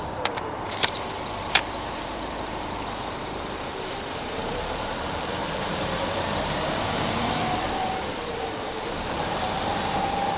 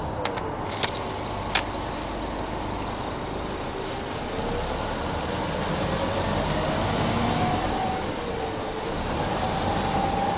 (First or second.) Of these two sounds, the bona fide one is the second